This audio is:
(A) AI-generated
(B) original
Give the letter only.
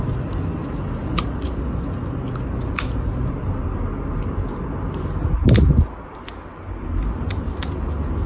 B